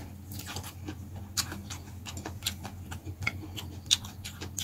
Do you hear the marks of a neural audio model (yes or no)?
no